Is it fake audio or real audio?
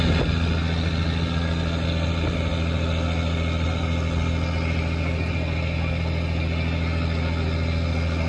real